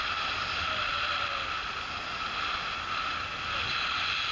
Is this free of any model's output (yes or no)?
yes